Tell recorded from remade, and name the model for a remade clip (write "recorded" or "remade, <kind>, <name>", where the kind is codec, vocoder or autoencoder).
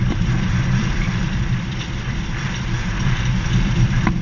remade, vocoder, BigVGAN v2